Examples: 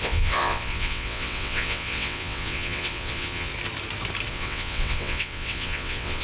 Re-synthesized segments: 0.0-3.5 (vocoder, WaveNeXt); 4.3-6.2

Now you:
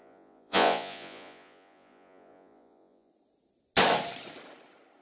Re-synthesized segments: 0.0-3.1 (vocoder, Vocos)